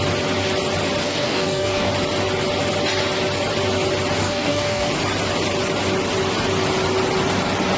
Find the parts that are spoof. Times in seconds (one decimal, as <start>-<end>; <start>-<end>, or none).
1.0-1.9; 4.2-4.9